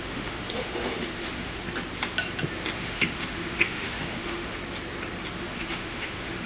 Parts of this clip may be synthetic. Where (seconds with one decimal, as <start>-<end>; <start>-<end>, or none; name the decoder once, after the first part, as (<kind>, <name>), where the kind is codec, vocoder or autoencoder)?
0.0-1.6 (autoencoder, DAC-VAE); 2.8-4.6; 5.4-6.5